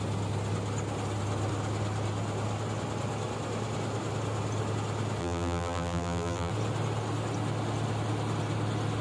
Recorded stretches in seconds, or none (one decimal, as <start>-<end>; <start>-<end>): 0.0-5.2; 6.5-9.0